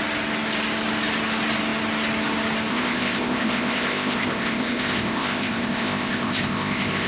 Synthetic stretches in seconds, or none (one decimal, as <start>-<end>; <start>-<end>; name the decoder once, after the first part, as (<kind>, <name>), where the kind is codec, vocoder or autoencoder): 2.7-7.1 (codec, ZipCodec)